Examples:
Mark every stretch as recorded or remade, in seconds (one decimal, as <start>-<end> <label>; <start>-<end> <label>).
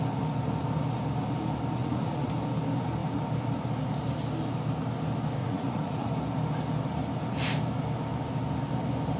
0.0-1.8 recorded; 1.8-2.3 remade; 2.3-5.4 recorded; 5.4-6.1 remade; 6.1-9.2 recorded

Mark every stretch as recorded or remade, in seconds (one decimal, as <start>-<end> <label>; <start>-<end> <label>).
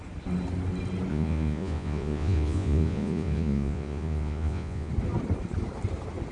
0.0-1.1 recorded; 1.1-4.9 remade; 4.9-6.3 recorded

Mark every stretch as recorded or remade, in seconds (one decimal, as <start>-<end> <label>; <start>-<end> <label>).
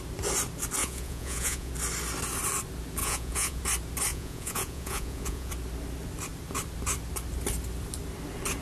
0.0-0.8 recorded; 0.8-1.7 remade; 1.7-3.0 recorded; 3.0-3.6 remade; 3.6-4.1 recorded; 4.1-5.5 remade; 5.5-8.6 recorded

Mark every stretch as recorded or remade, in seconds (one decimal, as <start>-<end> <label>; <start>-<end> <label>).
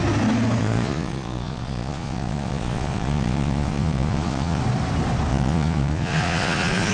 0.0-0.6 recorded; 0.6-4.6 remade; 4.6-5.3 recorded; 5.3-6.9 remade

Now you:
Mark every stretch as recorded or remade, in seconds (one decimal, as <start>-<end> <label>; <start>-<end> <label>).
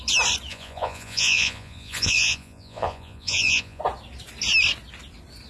0.0-0.5 recorded; 0.5-3.8 remade; 3.8-5.5 recorded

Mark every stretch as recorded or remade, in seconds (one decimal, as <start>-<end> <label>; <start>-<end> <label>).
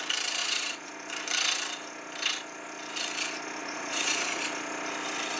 0.0-0.4 recorded; 0.4-0.9 remade; 0.9-3.6 recorded; 3.6-4.4 remade; 4.4-5.4 recorded